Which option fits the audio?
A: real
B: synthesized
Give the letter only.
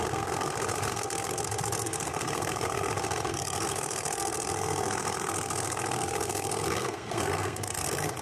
B